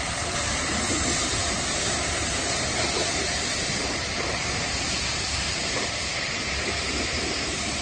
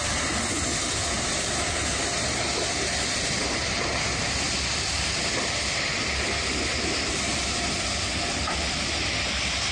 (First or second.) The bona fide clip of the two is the second